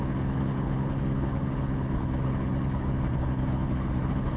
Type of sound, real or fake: fake